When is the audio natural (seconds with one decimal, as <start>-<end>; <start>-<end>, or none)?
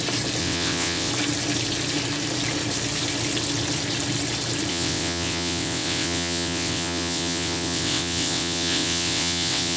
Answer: 0.0-0.4; 1.1-4.7